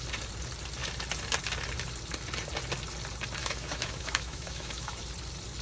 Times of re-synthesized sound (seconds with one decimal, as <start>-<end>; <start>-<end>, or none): 3.4-5.0